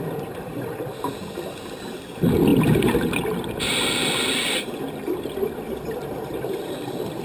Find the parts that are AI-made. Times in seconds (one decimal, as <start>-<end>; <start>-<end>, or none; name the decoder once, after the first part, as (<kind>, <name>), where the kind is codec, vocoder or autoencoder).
0.0-7.2 (vocoder, BigVGAN v2)